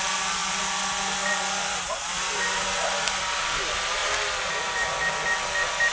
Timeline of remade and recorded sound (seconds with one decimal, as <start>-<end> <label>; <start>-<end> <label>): 0.0-5.9 recorded